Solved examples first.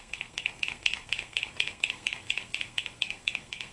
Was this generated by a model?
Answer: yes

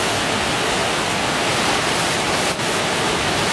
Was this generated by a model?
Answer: no